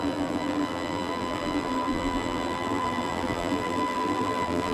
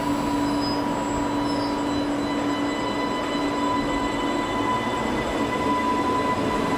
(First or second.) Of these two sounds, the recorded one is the second